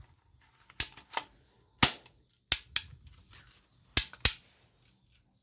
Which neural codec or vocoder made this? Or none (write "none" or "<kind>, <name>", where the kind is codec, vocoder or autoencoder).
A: none